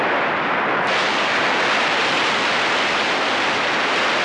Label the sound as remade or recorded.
recorded